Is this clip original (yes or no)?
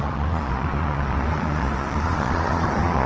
no